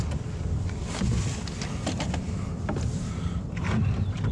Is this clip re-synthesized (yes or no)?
no